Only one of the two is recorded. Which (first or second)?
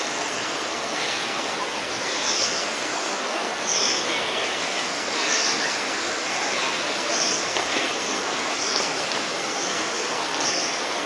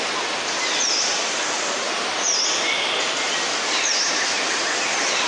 second